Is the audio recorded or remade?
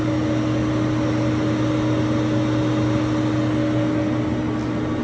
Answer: recorded